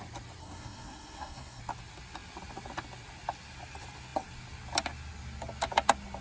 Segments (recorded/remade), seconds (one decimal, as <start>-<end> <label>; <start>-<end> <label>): 0.0-0.4 recorded; 0.4-1.6 remade; 1.6-6.2 recorded